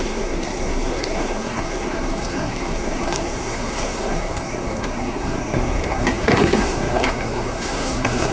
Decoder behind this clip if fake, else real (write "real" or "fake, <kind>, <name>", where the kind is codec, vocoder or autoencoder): fake, codec, SNAC